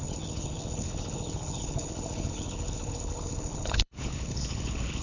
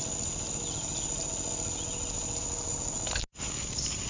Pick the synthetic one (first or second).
first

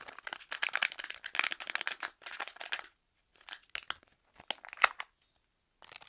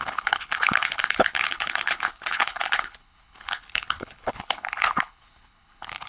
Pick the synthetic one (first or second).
second